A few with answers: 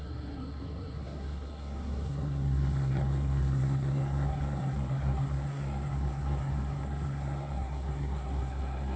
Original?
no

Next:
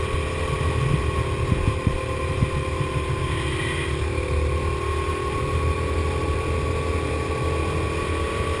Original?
yes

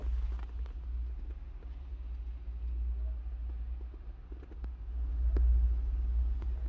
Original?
yes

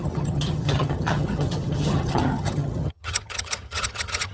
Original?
no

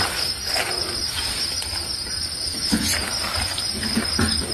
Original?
yes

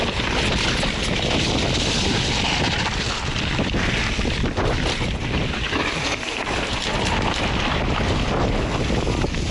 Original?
yes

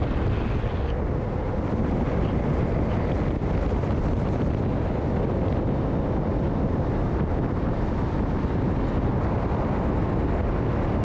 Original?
yes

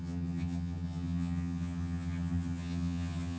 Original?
no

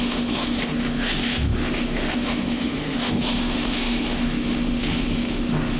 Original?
no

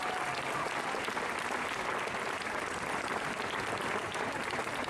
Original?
yes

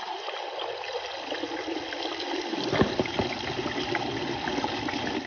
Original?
yes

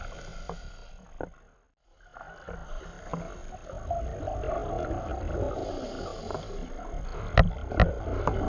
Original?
yes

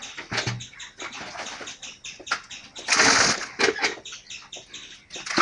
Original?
yes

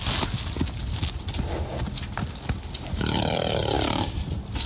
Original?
yes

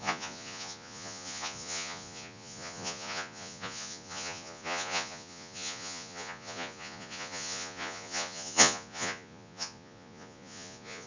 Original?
no